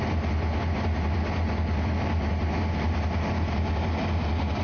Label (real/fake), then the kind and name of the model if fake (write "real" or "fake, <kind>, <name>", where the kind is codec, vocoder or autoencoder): real